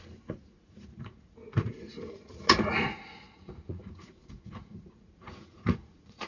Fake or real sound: fake